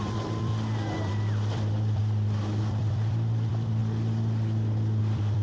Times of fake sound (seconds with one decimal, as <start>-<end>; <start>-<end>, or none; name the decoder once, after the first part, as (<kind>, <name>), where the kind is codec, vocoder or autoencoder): 0.0-0.5 (vocoder, BigVGAN v2); 1.5-2.0; 2.6-3.8; 5.0-5.4